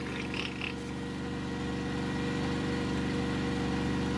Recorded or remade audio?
recorded